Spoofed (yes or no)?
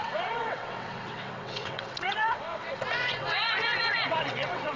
yes